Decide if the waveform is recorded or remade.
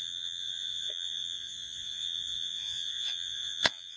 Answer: remade